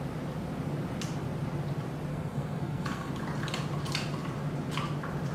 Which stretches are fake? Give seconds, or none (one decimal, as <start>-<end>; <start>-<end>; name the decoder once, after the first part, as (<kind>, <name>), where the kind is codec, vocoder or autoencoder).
2.1-3.1 (codec, SNAC)